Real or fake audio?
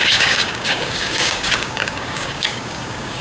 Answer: fake